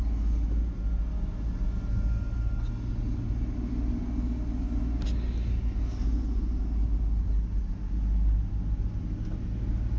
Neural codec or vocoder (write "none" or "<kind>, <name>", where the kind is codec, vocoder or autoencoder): none